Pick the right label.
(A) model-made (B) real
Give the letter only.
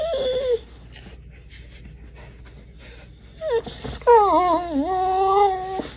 B